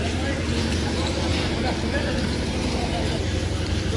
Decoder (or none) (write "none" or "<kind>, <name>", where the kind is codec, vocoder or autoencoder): none